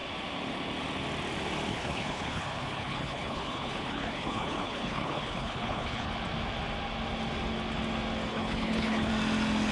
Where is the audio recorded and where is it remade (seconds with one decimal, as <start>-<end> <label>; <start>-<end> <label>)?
0.0-1.7 recorded; 1.7-6.1 remade; 6.1-8.3 recorded; 8.3-9.1 remade; 9.1-9.7 recorded